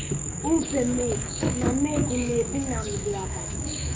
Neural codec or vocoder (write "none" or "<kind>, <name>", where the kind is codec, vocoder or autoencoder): autoencoder, DAC-VAE